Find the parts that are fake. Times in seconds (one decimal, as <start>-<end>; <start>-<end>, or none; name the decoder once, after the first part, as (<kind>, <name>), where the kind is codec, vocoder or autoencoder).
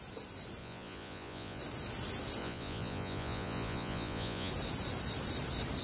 0.6-1.6 (vocoder, Vocos); 2.4-4.5